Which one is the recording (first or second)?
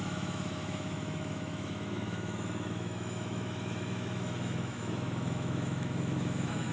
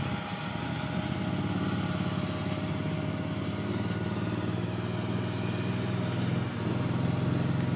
second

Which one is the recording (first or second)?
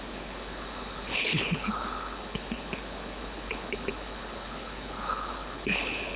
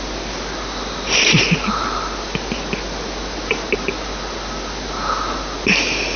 second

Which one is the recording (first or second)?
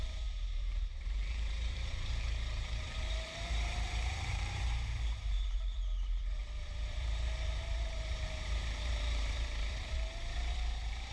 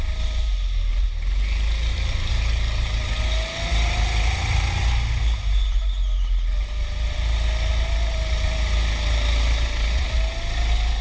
second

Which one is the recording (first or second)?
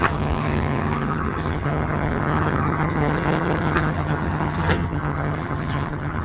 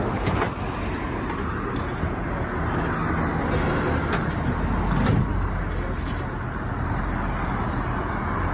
second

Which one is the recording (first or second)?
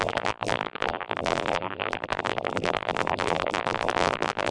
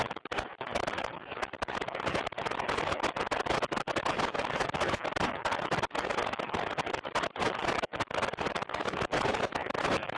second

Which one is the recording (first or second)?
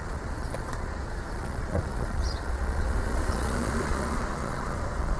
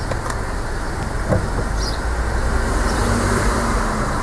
second